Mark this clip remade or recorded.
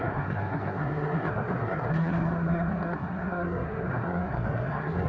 remade